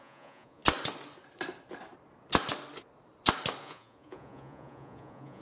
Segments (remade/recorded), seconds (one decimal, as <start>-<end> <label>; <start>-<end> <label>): 0.0-0.6 remade; 0.6-3.6 recorded; 3.6-5.4 remade